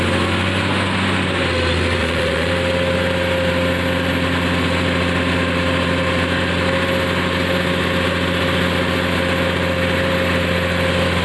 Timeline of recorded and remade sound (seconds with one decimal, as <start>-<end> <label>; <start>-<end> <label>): 0.0-2.0 recorded; 2.0-2.5 remade; 2.5-11.2 recorded